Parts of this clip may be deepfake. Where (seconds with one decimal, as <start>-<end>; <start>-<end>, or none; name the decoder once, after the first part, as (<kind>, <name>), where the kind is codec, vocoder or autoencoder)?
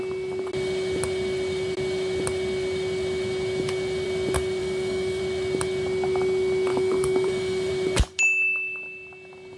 4.6-5.2 (codec, DAC); 6.7-7.7